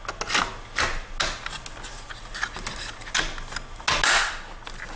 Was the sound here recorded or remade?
recorded